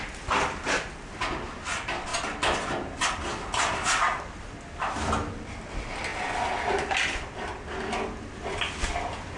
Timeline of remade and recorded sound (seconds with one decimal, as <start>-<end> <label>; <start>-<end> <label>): 0.0-9.4 recorded